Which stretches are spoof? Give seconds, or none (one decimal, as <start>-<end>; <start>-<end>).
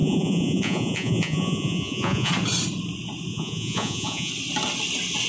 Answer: 0.0-2.3; 3.3-4.3